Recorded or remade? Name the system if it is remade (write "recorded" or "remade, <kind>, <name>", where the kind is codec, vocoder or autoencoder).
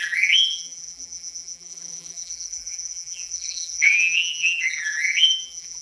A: remade, vocoder, BigVGAN v2